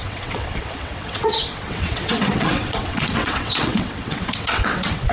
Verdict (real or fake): fake